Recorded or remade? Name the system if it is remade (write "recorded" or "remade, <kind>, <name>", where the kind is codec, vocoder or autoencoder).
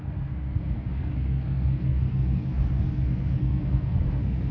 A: remade, codec, SNAC